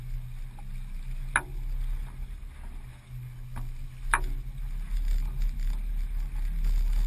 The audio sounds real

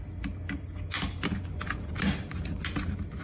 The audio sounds real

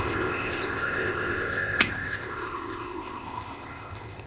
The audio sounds fake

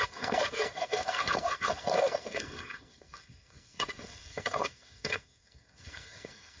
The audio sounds fake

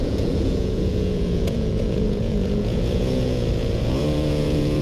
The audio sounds fake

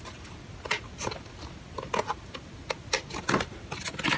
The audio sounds real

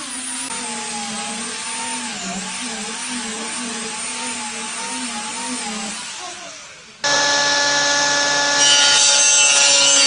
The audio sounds real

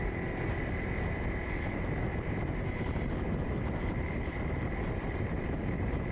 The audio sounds fake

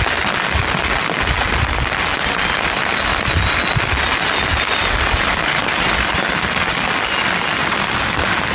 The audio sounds real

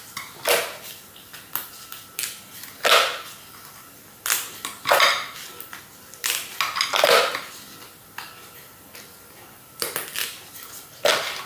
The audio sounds real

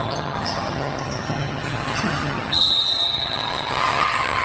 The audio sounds fake